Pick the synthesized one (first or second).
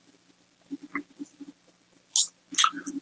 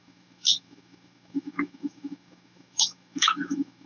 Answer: second